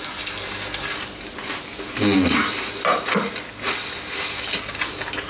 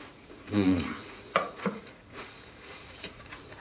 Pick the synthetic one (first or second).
second